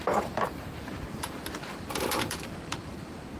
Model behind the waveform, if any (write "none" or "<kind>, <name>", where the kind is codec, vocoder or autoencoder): vocoder, BigVGAN v2